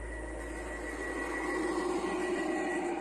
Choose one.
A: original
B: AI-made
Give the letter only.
A